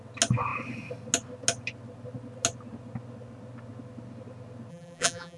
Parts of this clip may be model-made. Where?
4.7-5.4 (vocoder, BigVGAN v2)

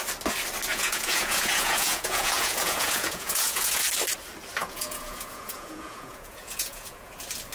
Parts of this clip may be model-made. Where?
0.7-3.8 (vocoder, Vocos); 4.6-7.1

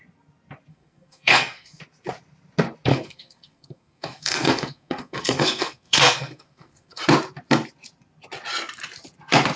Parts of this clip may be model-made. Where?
0.7-1.8 (codec, SNAC); 2.9-7.0

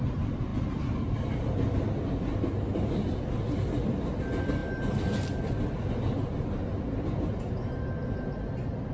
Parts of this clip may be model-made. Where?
none

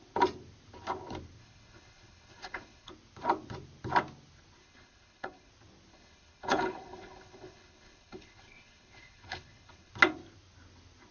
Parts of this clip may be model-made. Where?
1.4-2.9 (codec, HILCodec); 4.6-5.5; 5.9-9.9